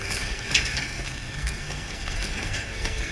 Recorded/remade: remade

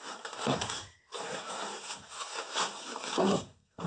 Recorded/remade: remade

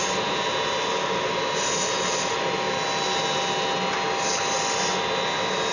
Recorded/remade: recorded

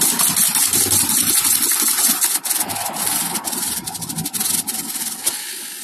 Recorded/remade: recorded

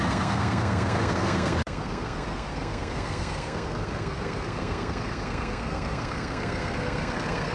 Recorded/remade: remade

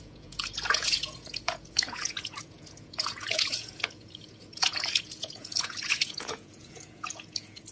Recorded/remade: remade